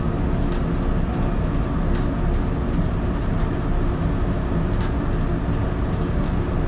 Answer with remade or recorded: recorded